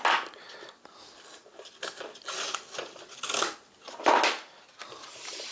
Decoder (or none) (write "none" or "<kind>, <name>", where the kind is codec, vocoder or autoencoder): none